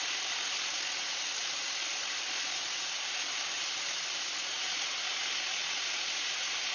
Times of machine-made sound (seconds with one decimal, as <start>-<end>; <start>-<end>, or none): none